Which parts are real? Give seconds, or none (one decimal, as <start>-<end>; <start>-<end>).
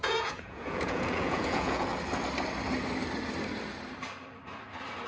1.9-5.1